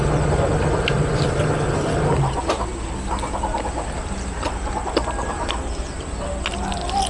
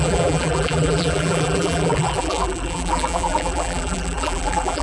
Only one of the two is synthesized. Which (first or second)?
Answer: second